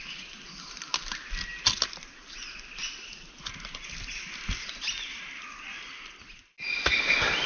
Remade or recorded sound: recorded